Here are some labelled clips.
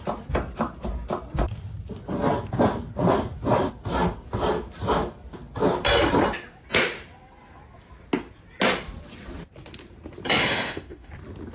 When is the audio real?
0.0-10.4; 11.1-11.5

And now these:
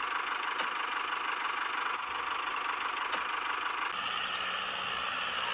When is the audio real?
0.0-5.5

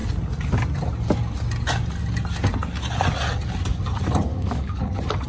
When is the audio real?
0.0-4.3; 4.8-5.3

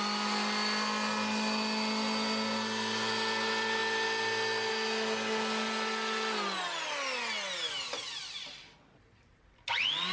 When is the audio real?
0.0-10.1

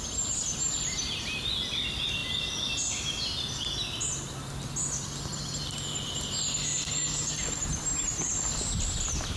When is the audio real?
0.0-7.6; 8.3-9.4

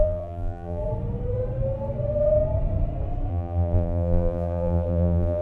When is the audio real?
0.8-3.3

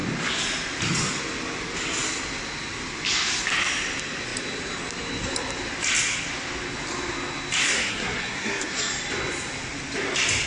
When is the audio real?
0.0-7.6; 8.9-10.5